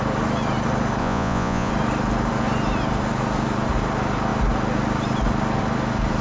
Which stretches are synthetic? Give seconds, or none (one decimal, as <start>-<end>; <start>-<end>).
1.0-1.7

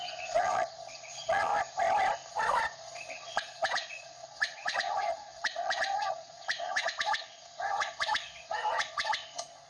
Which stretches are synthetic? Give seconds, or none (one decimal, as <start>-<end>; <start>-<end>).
0.0-1.5; 2.3-9.7

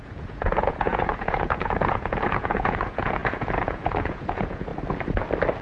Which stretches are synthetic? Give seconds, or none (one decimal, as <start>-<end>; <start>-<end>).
0.0-4.7

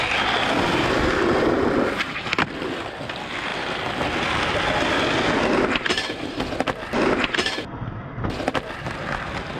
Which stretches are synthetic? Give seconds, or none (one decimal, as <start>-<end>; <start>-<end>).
none